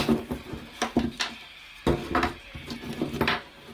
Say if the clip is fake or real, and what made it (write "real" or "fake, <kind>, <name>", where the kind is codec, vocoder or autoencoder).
real